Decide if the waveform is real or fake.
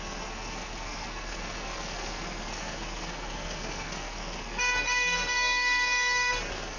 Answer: fake